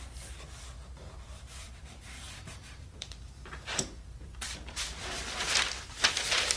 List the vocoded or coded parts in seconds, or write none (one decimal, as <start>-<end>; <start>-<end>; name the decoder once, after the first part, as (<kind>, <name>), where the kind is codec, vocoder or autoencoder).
1.0-5.0 (vocoder, BigVGAN v2)